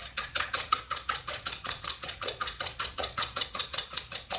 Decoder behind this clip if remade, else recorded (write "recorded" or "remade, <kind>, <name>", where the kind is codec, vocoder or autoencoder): remade, vocoder, Vocos